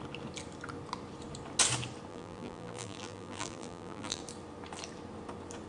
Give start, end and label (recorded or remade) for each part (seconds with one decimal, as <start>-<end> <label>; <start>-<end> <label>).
0.0-2.1 recorded; 2.1-4.2 remade; 4.2-5.7 recorded